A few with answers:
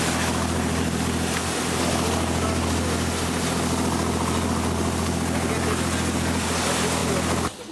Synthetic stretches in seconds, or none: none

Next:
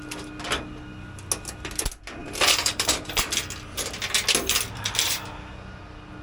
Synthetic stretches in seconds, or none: 2.2-3.1

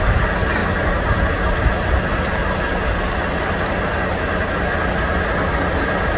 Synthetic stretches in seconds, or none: none

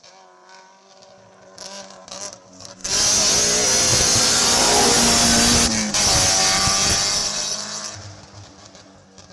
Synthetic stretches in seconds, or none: 3.9-4.9; 7.2-7.9